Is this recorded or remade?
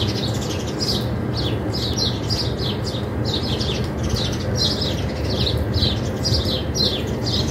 recorded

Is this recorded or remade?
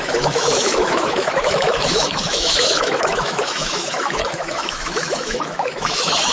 remade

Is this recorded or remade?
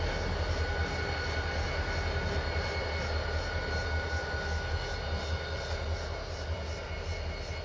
recorded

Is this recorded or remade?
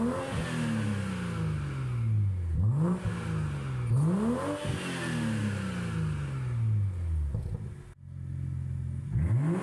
recorded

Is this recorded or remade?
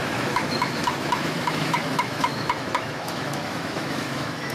remade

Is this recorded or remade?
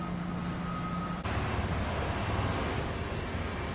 recorded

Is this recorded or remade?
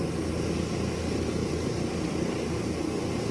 recorded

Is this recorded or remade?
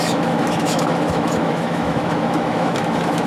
remade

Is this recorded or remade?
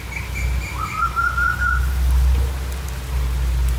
recorded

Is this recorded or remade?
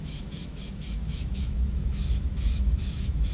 remade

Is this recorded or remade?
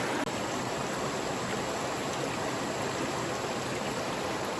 recorded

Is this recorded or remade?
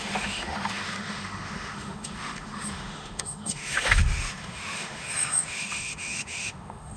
remade